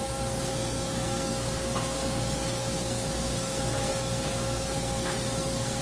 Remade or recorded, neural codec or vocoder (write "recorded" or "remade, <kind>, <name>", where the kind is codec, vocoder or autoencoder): remade, codec, SNAC